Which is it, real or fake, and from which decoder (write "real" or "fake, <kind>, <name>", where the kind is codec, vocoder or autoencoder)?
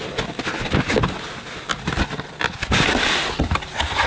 real